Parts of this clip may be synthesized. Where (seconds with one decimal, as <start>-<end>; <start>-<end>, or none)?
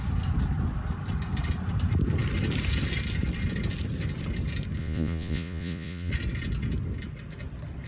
4.8-6.1